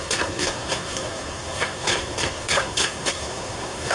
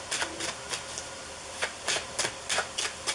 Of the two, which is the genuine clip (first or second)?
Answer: second